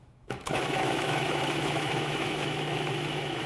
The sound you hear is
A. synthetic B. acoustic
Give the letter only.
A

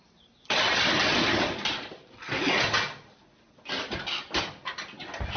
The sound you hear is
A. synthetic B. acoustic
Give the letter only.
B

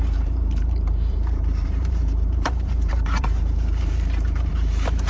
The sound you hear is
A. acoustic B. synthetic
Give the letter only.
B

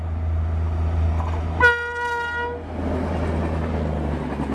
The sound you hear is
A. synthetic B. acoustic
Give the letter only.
B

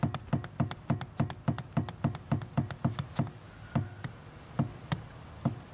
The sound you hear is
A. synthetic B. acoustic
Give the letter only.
B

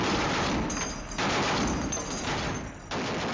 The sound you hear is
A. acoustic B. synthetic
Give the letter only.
A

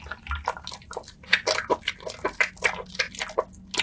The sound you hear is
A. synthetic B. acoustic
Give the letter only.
B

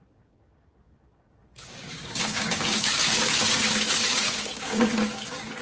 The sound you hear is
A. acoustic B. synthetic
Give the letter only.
B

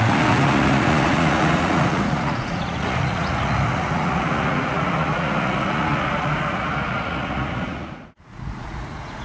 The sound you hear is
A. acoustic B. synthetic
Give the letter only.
B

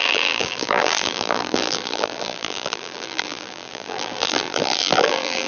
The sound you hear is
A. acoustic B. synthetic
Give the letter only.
B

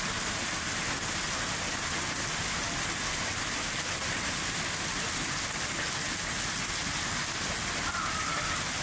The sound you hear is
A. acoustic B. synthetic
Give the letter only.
A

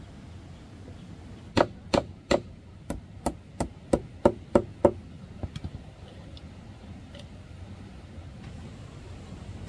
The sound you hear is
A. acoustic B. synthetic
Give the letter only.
A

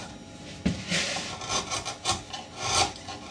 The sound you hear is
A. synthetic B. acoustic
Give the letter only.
B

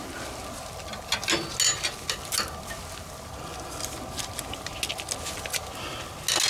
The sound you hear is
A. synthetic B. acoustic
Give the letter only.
B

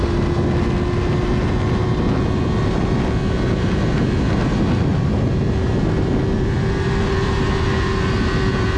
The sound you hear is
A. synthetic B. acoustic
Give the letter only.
B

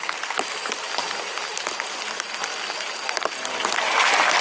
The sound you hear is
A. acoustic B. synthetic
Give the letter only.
A